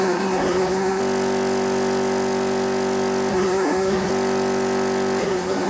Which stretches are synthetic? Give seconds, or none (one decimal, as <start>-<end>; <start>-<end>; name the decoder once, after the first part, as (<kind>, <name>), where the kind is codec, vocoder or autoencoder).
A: 0.0-1.0 (codec, SNAC); 3.3-4.1; 5.2-5.7